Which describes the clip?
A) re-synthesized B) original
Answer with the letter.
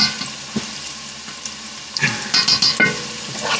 B